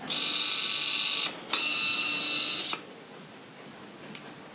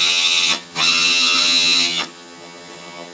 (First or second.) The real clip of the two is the first